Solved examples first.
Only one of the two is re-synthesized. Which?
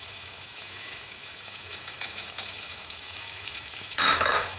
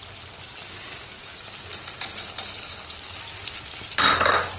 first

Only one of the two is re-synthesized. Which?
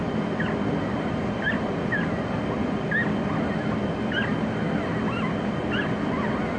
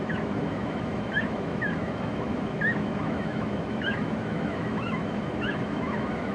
second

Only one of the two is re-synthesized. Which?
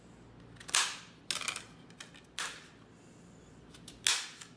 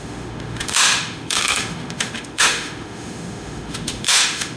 second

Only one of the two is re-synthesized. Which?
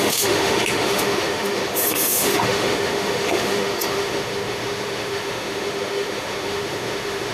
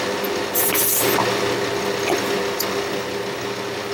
first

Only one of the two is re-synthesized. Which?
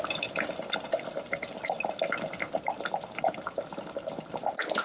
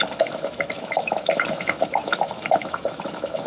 second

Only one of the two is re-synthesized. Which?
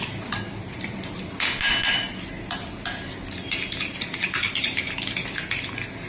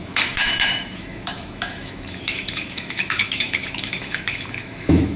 second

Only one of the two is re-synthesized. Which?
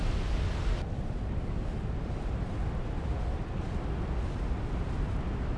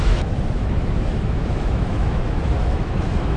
second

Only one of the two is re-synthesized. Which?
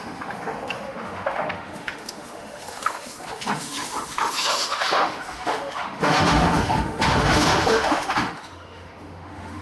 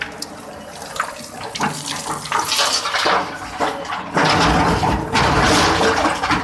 first